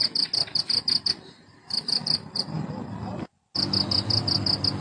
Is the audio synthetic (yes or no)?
no